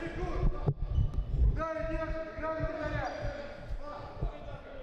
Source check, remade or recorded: recorded